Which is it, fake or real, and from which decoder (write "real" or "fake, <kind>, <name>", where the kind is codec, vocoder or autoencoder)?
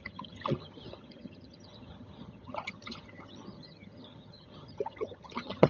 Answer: fake, vocoder, HiFi-GAN